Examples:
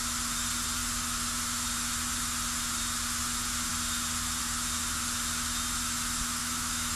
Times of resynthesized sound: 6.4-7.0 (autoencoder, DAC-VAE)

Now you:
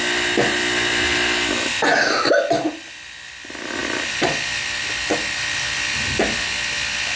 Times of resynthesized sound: none

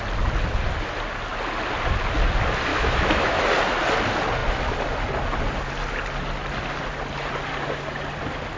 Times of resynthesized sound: 2.7-3.5 (autoencoder, DAC-VAE)

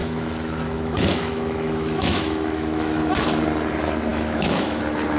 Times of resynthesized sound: 0.0-3.1 (autoencoder, DAC-VAE); 4.1-4.8

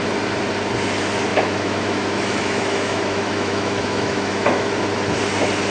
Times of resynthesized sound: 1.3-4.7 (autoencoder, DAC-VAE)

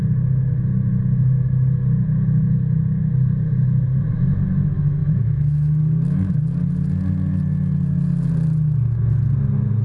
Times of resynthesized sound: 5.0-6.4 (autoencoder, DAC-VAE)

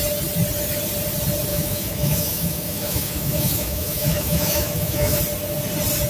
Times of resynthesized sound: 1.5-5.2 (autoencoder, DAC-VAE)

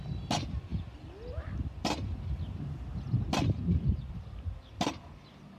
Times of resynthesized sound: none